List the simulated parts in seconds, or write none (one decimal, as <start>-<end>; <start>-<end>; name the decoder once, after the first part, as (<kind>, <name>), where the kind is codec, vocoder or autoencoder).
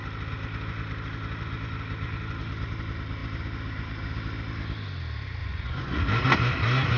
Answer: 5.4-6.0 (vocoder, Vocos)